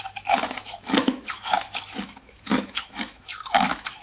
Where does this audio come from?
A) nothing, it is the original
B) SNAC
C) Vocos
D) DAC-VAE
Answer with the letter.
D